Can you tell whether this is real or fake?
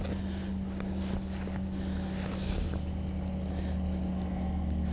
real